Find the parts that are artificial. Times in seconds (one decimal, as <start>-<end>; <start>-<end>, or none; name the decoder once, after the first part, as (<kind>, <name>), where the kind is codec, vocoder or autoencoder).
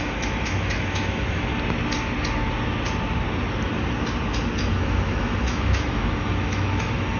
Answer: 0.0-1.5 (autoencoder, DAC-VAE); 4.7-7.2